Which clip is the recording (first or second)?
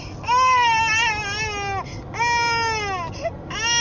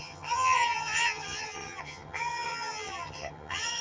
first